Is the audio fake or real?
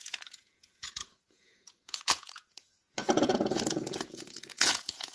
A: fake